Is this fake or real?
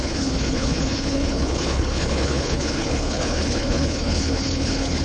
fake